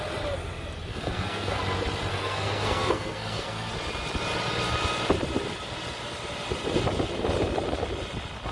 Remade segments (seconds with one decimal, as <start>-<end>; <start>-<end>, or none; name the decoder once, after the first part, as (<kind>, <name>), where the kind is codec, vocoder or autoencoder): 0.9-1.6 (codec, SNAC); 2.1-3.7

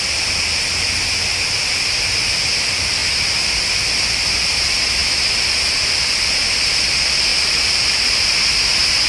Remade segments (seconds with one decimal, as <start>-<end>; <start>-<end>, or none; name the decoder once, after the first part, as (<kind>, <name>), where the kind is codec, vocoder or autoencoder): 7.3-9.1 (vocoder, BigVGAN v2)

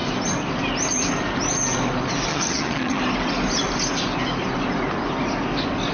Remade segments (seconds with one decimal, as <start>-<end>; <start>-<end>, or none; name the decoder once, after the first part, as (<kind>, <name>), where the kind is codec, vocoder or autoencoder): 2.3-3.0 (vocoder, HiFi-GAN)